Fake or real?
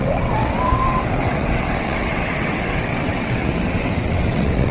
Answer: fake